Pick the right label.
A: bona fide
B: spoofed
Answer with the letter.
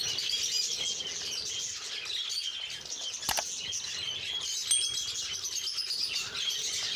A